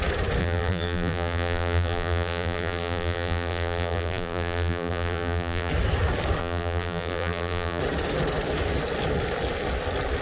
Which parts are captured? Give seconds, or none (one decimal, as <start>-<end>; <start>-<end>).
0.0-0.4; 5.7-6.4; 7.8-10.2